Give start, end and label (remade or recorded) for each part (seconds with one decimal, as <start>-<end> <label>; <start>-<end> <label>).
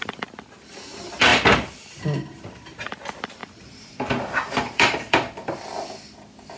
0.0-3.4 recorded; 3.4-5.6 remade; 5.6-6.6 recorded